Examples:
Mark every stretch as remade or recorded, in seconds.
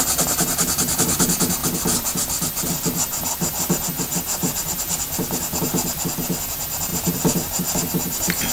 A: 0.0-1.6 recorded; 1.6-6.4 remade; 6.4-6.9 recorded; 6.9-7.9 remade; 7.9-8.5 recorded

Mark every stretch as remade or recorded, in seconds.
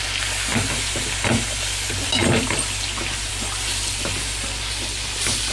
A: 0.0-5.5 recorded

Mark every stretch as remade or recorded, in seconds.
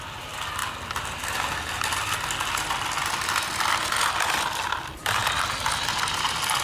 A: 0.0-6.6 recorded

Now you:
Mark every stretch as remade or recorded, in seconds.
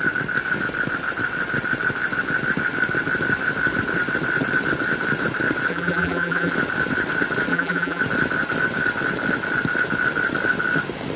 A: 0.0-5.7 recorded; 5.7-6.5 remade; 6.5-7.5 recorded; 7.5-8.0 remade; 8.0-11.2 recorded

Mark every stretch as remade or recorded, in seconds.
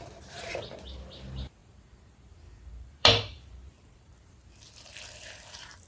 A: 0.0-1.6 recorded; 1.6-4.6 remade; 4.6-5.9 recorded